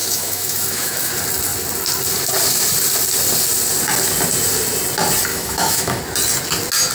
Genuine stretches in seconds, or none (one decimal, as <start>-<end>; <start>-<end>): 1.1-5.3; 6.0-6.9